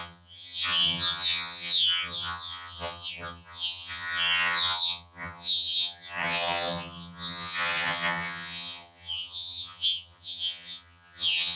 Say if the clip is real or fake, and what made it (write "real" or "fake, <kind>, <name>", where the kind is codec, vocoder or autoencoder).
fake, vocoder, HiFi-GAN